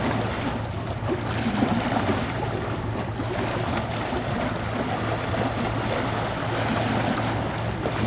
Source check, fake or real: real